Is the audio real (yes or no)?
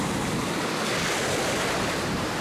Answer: yes